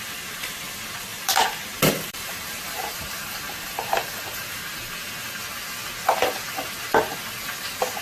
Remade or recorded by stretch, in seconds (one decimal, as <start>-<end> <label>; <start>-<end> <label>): 0.0-1.1 recorded; 1.1-4.6 remade; 4.6-8.0 recorded